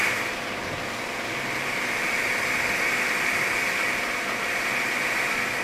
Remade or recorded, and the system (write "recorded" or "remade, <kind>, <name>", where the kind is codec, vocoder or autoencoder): recorded